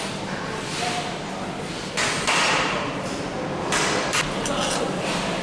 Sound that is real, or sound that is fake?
real